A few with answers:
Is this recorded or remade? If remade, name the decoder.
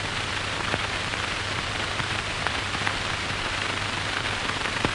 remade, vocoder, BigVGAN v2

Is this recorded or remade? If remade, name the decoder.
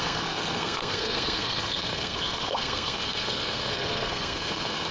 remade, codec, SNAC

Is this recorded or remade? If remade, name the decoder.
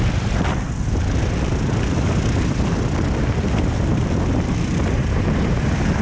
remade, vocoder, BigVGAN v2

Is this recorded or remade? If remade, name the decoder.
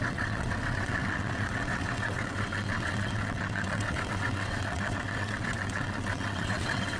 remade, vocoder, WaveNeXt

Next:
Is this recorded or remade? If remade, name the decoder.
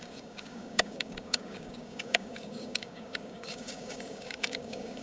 remade, codec, DAC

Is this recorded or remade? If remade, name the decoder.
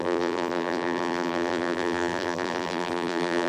remade, vocoder, BigVGAN v2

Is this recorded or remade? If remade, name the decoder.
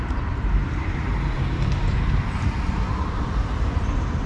remade, vocoder, BigVGAN v2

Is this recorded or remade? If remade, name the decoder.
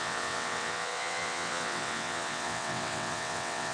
remade, vocoder, WaveNeXt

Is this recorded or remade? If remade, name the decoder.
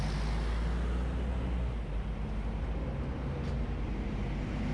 recorded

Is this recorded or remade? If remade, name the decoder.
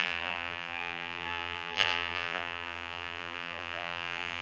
remade, vocoder, BigVGAN v2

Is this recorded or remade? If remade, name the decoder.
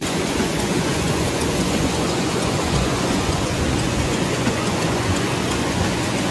remade, vocoder, Vocos